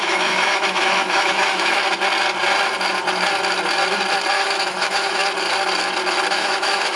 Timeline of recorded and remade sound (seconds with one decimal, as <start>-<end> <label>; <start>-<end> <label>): 0.0-1.8 remade; 1.8-4.3 recorded; 4.3-5.2 remade; 5.2-6.3 recorded; 6.3-7.0 remade